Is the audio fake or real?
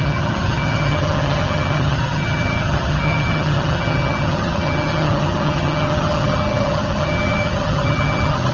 fake